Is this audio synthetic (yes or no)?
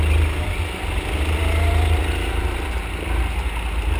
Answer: no